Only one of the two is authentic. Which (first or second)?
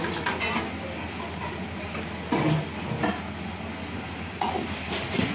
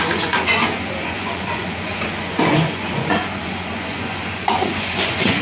first